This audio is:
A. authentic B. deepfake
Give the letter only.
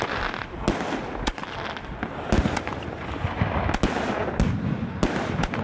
A